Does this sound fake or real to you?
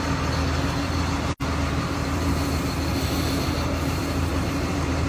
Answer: fake